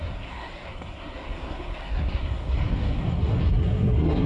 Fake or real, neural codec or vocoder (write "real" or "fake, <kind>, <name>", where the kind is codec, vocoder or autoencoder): fake, codec, SNAC